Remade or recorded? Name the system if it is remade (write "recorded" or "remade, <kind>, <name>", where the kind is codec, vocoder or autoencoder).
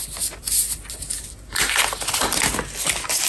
recorded